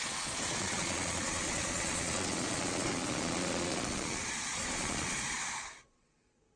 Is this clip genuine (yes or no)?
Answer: no